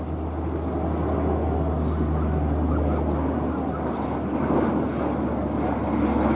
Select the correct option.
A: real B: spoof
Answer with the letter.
A